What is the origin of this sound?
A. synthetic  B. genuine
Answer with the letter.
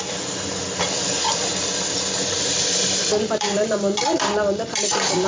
A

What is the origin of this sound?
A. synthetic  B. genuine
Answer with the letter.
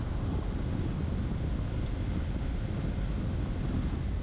B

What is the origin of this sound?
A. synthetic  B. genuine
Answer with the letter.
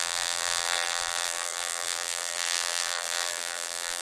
A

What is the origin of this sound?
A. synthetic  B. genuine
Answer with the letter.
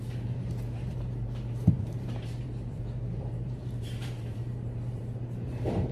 A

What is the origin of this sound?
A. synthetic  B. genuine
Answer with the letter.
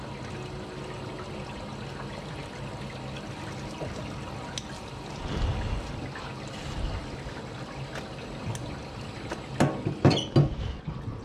B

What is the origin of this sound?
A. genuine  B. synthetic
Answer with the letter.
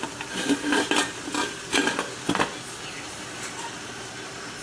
A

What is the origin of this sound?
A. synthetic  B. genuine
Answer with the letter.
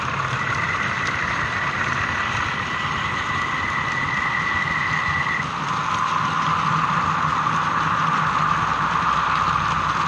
B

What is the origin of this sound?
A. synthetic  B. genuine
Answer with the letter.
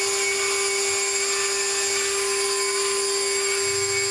B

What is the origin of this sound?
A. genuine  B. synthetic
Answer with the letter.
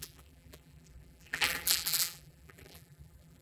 B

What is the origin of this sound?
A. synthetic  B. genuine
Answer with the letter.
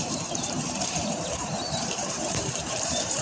A